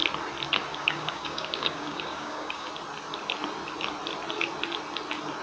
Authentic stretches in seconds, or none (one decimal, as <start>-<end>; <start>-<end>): 0.0-0.7; 2.7-5.4